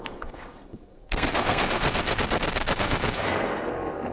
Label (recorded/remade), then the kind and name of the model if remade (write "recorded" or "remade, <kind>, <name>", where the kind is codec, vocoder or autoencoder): remade, codec, SNAC